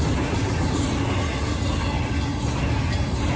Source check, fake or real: real